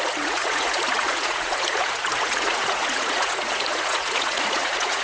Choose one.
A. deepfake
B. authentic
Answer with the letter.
A